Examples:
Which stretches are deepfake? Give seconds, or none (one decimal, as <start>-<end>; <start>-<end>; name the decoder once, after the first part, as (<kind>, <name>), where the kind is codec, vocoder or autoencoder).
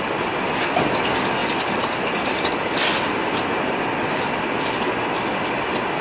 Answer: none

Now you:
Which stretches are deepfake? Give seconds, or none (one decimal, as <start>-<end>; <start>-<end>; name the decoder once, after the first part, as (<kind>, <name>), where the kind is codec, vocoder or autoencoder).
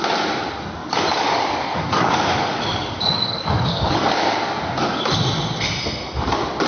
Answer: 0.8-4.1 (codec, DAC)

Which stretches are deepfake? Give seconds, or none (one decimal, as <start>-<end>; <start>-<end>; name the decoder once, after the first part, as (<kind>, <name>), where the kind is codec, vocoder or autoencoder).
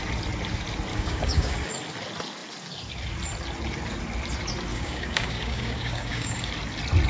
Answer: 0.9-1.7 (codec, DAC); 4.7-6.5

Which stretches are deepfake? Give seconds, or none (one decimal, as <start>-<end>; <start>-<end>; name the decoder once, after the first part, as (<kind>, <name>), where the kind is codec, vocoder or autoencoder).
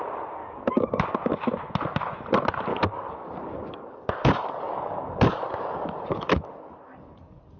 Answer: 0.4-1.1 (codec, DAC); 2.7-7.6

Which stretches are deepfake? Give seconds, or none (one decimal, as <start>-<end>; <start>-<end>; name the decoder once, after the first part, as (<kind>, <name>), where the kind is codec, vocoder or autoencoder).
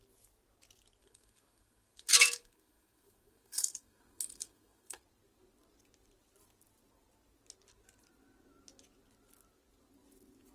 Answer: 1.0-5.0 (codec, DAC)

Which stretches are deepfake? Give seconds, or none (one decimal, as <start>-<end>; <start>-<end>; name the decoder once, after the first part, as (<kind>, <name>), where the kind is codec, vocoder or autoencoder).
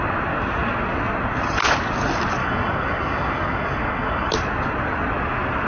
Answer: 2.4-4.3 (codec, DAC)